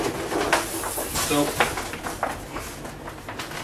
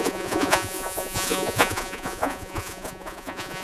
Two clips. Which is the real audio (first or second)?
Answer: first